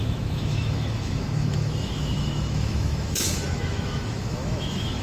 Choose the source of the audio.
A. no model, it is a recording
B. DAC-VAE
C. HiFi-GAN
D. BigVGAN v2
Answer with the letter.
B